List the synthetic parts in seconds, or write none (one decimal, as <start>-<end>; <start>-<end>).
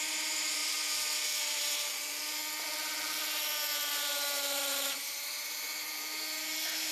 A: 0.0-2.4; 3.9-6.9